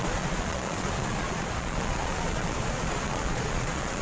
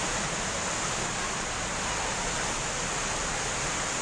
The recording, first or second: second